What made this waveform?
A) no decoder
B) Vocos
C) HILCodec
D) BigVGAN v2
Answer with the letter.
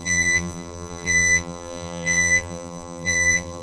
D